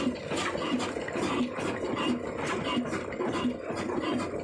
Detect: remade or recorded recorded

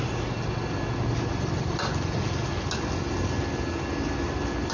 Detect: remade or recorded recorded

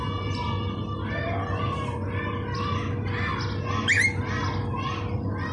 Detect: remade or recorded recorded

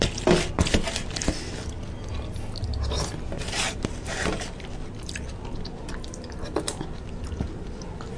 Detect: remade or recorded recorded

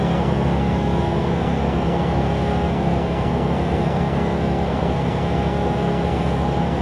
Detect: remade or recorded remade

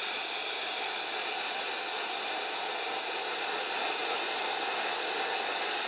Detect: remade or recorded recorded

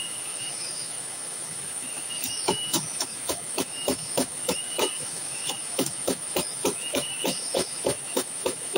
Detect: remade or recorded remade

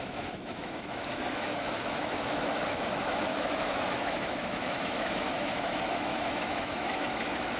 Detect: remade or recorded remade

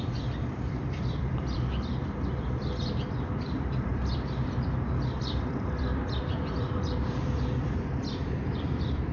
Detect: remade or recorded remade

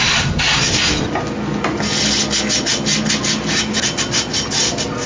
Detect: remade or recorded recorded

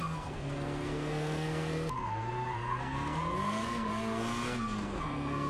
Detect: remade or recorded remade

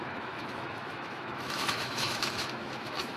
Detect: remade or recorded remade